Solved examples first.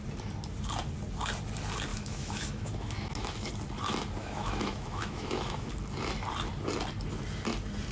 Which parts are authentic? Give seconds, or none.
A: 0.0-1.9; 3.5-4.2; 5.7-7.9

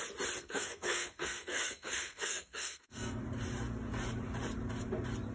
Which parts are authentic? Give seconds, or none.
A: 0.0-0.4; 3.2-5.3